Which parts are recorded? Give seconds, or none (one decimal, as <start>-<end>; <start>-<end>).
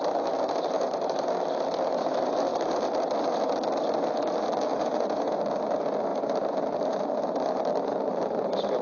0.0-4.7; 5.4-8.8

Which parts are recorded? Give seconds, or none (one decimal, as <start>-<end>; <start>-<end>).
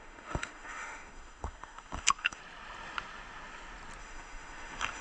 2.4-4.0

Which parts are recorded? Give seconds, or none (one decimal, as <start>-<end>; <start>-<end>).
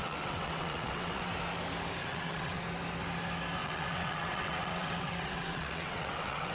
1.3-2.0; 2.6-3.6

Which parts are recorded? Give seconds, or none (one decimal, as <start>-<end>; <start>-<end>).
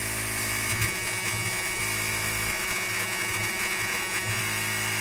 0.0-0.7; 1.8-2.5; 4.4-5.0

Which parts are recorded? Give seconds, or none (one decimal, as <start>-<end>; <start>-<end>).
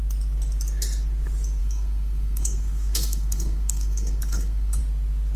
0.0-1.6; 4.8-5.4